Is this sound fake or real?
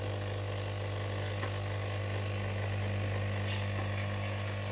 real